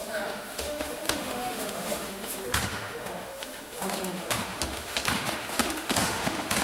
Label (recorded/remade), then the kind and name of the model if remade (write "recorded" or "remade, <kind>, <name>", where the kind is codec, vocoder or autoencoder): remade, autoencoder, DAC-VAE